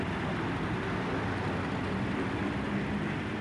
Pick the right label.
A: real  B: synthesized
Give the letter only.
A